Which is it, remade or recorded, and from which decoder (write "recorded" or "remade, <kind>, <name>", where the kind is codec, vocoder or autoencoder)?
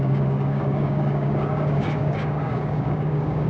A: remade, codec, DAC